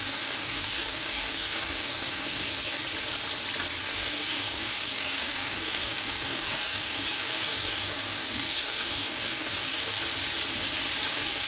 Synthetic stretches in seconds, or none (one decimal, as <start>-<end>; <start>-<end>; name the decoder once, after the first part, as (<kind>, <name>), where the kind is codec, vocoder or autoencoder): 0.0-2.8 (codec, DAC); 3.8-10.0; 11.1-11.5